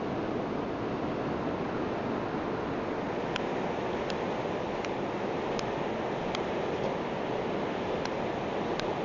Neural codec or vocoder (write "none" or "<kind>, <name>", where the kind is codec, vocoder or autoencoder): none